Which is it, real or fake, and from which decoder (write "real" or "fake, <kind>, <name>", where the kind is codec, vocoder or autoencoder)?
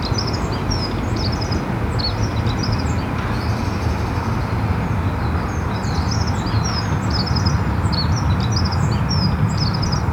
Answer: real